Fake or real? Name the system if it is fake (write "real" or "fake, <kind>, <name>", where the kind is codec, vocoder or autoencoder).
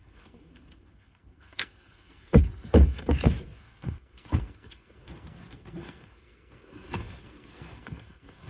fake, codec, SNAC